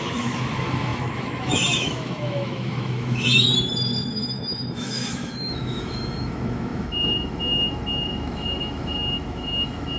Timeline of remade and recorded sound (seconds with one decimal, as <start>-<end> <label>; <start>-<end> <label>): 0.0-3.5 remade; 3.5-4.1 recorded; 4.1-10.0 remade